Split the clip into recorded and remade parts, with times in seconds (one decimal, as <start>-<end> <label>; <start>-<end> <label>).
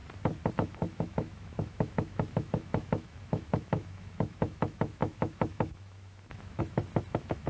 0.0-0.5 recorded; 0.5-7.5 remade